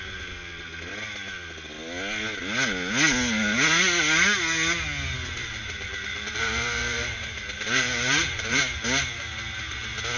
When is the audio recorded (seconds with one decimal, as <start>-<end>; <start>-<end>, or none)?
0.0-5.4; 8.6-10.2